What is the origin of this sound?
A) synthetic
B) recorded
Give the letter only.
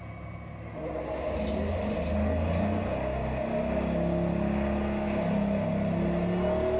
B